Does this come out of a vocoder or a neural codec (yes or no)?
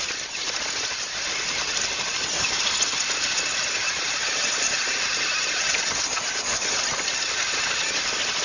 no